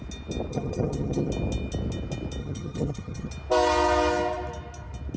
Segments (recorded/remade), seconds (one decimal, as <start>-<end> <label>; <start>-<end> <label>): 0.0-0.5 recorded; 0.5-1.3 remade; 1.3-2.4 recorded; 2.4-3.3 remade; 3.3-5.2 recorded